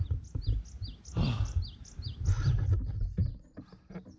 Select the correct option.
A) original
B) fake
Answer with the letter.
A